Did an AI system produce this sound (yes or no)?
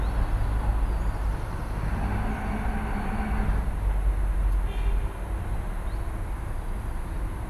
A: no